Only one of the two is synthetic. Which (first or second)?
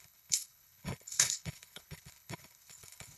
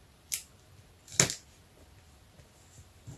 first